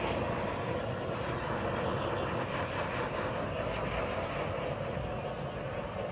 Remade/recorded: recorded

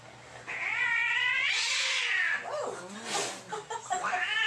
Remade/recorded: recorded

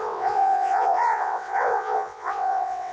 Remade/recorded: remade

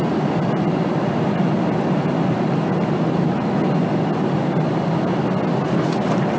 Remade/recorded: recorded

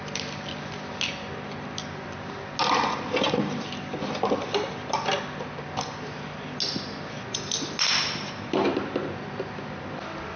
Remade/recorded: recorded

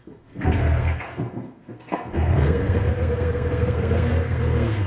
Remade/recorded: remade